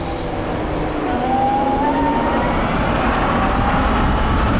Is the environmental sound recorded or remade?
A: recorded